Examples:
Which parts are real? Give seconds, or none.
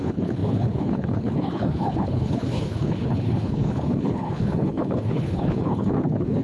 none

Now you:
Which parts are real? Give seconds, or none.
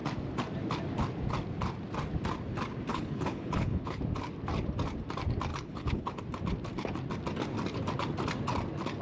0.0-2.9; 4.0-5.5; 6.2-9.0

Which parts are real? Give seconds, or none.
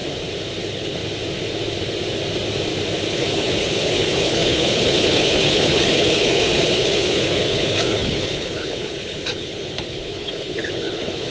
0.0-0.6; 1.0-3.1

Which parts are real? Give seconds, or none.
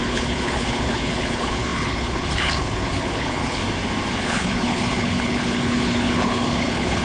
3.6-4.1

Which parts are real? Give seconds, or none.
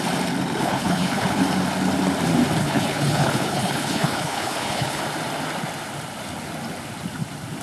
0.0-0.6; 1.4-2.6; 5.0-7.6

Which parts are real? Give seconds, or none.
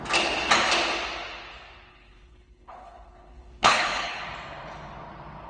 0.0-1.9; 4.2-5.5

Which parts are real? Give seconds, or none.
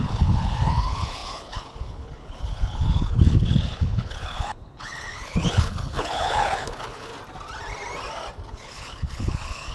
7.1-8.5